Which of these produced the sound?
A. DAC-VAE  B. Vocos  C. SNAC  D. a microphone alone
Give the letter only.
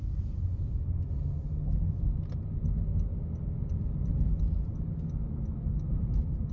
D